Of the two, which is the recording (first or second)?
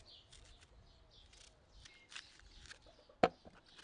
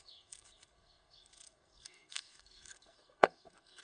first